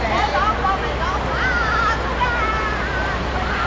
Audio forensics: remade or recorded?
recorded